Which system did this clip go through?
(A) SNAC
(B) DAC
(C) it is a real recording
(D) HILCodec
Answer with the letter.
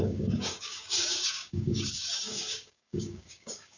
B